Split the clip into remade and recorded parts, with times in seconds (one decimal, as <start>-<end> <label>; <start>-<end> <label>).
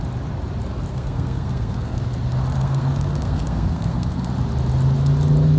0.0-0.9 recorded; 0.9-2.0 remade; 2.0-2.5 recorded; 2.5-4.3 remade; 4.3-5.6 recorded